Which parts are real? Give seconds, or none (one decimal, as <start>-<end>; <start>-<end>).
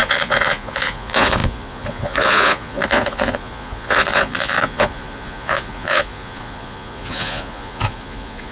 none